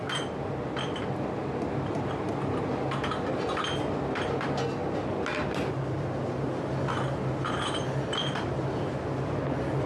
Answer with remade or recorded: recorded